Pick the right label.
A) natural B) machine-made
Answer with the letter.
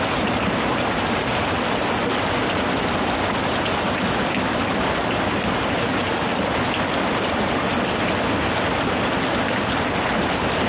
A